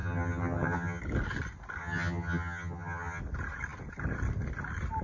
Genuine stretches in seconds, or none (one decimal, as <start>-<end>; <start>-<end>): 1.0-1.8; 3.2-5.0